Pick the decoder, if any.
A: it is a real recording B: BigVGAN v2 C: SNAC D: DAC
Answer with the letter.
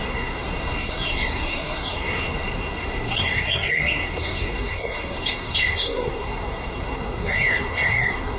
C